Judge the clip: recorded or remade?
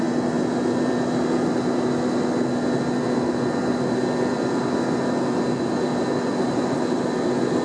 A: recorded